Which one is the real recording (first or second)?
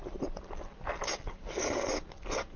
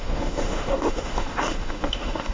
first